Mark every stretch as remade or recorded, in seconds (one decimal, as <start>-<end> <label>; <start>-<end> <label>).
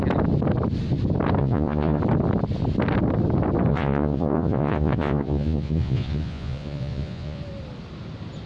0.0-1.4 recorded; 1.4-2.0 remade; 2.0-3.7 recorded; 3.7-7.4 remade; 7.4-8.5 recorded